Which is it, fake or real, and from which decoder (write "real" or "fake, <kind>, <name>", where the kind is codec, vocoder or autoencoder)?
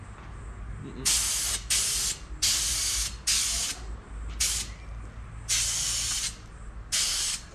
real